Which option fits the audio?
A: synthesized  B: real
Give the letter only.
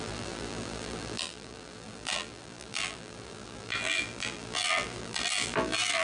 A